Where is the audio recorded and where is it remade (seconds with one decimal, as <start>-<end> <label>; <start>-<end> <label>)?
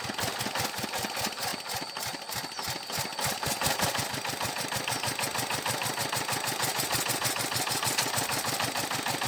0.0-9.3 recorded